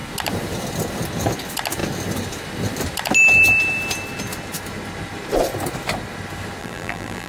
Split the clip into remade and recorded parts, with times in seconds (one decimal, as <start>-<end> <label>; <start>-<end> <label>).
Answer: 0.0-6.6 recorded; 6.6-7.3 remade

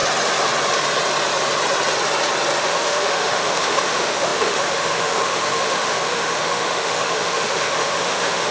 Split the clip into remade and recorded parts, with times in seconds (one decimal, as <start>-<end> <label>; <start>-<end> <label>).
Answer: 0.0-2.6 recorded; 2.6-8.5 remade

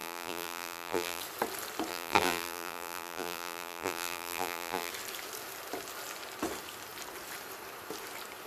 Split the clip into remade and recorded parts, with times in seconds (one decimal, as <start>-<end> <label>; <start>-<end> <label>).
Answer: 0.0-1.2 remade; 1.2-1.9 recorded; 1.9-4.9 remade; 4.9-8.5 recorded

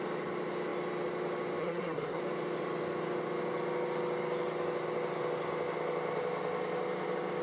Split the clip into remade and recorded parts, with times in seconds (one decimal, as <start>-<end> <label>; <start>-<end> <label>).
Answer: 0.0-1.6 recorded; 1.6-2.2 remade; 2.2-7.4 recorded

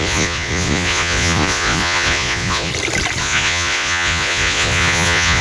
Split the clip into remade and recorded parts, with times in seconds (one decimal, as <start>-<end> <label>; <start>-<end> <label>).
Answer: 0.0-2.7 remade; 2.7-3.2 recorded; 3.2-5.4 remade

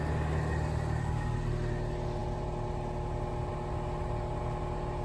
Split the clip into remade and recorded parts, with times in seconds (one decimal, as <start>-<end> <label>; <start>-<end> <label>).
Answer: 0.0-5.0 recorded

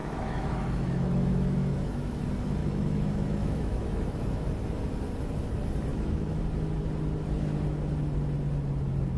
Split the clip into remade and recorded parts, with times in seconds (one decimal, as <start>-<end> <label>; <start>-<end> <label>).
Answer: 0.0-2.2 remade; 2.2-2.6 recorded; 2.6-4.5 remade; 4.5-5.9 recorded; 5.9-6.4 remade; 6.4-9.2 recorded